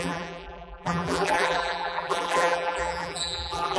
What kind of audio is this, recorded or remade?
remade